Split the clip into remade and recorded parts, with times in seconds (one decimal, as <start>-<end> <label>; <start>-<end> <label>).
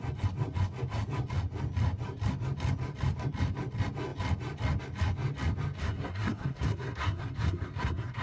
0.0-5.8 recorded; 5.8-8.2 remade